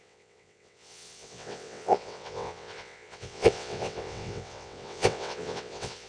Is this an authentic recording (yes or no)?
no